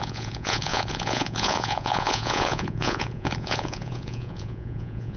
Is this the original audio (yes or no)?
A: no